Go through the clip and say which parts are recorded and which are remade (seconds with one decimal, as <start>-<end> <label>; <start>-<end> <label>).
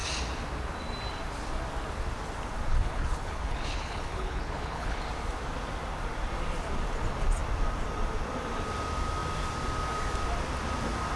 0.0-2.7 recorded; 2.7-5.0 remade; 5.0-11.2 recorded